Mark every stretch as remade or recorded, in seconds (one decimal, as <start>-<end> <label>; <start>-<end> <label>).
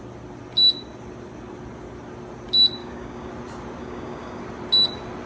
0.0-2.8 recorded; 2.8-3.3 remade; 3.3-3.8 recorded; 3.8-4.4 remade; 4.4-5.3 recorded